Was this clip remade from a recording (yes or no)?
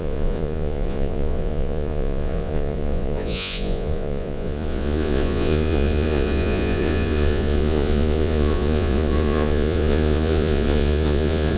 yes